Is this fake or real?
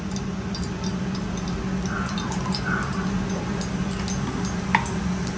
real